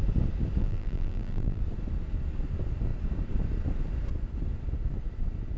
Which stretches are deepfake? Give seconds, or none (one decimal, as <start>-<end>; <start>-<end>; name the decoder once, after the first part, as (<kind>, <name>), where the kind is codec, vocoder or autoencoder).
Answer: 0.6-1.6 (vocoder, BigVGAN v2)